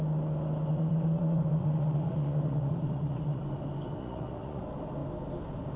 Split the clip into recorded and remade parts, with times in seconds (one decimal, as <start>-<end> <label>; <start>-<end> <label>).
0.0-0.7 recorded; 0.7-3.4 remade; 3.4-4.0 recorded; 4.0-4.6 remade; 4.6-5.8 recorded